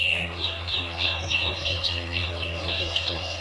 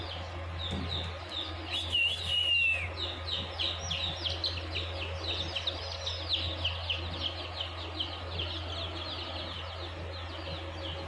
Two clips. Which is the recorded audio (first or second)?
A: second